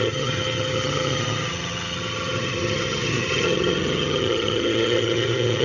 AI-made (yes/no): yes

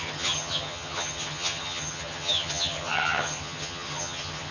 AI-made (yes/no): yes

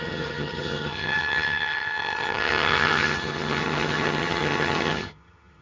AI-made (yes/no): yes